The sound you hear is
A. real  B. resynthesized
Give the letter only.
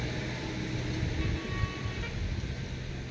A